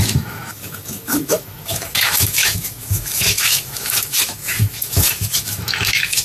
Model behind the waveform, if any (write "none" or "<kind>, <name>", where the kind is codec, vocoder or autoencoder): autoencoder, DAC-VAE